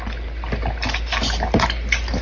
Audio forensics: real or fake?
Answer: real